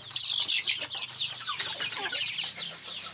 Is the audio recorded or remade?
remade